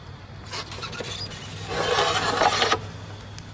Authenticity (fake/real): real